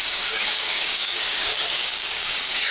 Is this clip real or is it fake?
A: fake